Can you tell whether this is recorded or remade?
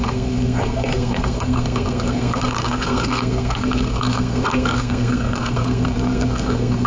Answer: remade